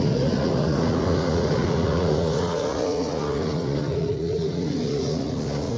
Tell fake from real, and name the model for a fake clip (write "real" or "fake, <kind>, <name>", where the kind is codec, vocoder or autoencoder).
fake, vocoder, Vocos